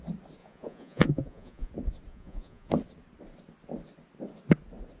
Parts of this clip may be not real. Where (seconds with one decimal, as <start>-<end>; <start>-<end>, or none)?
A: 0.4-1.7; 2.1-2.7